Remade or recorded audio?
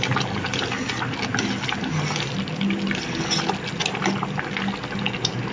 recorded